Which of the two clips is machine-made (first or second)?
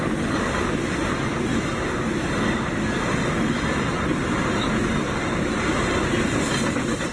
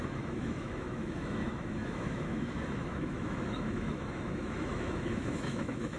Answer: second